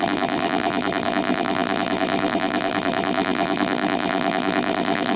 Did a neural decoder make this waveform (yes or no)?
yes